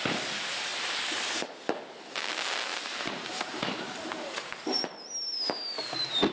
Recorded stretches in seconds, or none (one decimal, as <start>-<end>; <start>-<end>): 0.0-0.7; 1.5-2.7; 4.9-6.3